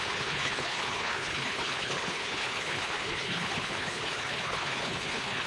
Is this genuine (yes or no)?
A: no